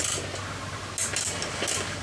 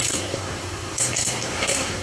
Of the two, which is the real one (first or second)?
first